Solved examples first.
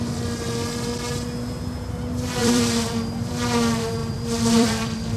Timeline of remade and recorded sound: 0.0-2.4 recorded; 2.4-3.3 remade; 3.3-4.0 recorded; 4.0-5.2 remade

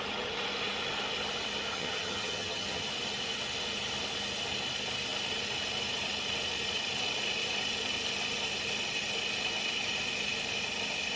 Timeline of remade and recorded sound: 0.0-1.7 recorded; 1.7-2.9 remade; 2.9-11.2 recorded

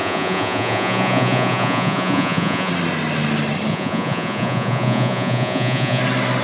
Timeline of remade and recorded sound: 0.0-2.7 remade; 2.7-3.7 recorded; 3.7-6.0 remade; 6.0-6.4 recorded

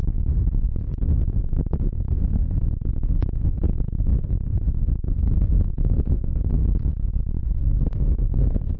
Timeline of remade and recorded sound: 0.0-0.8 recorded; 0.8-6.6 remade; 6.6-7.4 recorded; 7.4-8.8 remade

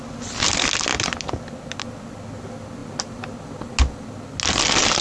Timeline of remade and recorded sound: 0.0-5.0 recorded

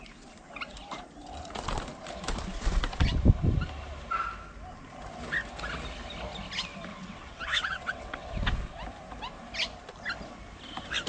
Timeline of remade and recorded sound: 0.0-6.9 recorded; 6.9-8.3 remade; 8.3-11.1 recorded

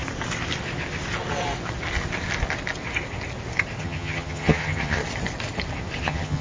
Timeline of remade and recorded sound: 0.0-3.8 recorded; 3.8-5.0 remade; 5.0-6.0 recorded; 6.0-6.4 remade